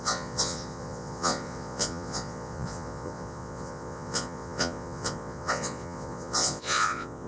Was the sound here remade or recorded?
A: remade